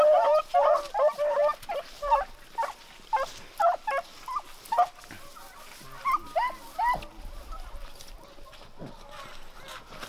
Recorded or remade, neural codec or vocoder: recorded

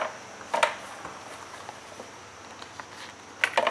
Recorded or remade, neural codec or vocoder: recorded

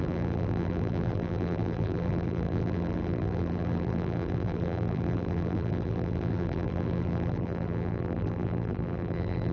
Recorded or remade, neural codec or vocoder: remade, vocoder, BigVGAN v2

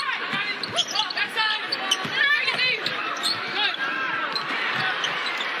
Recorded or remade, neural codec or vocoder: recorded